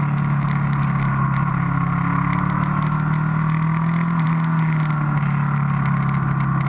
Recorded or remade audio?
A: recorded